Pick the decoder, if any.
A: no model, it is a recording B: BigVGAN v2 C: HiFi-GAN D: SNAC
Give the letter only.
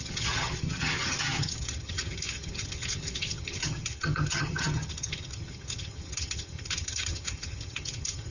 C